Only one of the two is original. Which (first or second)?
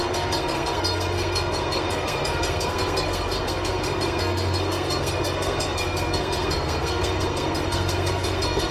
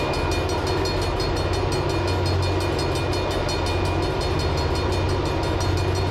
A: second